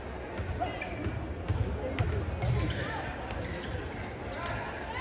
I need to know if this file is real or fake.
real